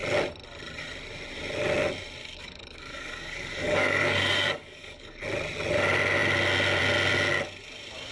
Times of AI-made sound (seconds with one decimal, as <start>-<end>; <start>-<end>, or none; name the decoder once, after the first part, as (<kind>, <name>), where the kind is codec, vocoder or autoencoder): 2.2-5.2 (codec, DAC)

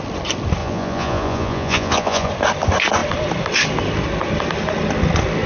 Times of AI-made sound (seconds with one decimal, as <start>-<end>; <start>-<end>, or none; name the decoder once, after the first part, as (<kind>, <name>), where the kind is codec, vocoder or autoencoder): 0.6-2.3 (vocoder, Vocos)

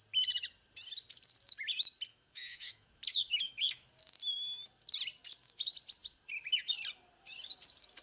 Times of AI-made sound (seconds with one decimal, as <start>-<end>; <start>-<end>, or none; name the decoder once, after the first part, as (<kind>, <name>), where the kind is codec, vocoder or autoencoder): 2.1-3.9 (autoencoder, DAC-VAE)

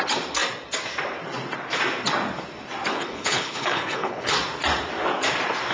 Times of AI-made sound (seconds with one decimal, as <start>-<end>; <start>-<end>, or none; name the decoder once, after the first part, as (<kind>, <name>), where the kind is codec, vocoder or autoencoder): 2.9-4.3 (codec, HILCodec)

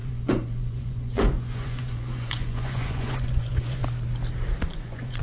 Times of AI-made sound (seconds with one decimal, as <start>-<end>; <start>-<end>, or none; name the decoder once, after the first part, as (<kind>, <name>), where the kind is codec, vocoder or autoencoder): 0.0-3.8 (vocoder, Vocos); 4.7-5.2